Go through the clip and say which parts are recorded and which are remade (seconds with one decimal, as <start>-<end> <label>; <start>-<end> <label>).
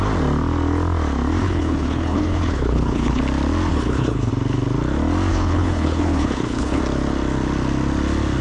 0.0-1.4 recorded; 1.4-3.2 remade; 3.2-3.7 recorded; 3.7-4.3 remade; 4.3-5.3 recorded; 5.3-6.8 remade; 6.8-8.4 recorded